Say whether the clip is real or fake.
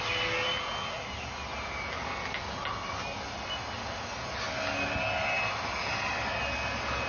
real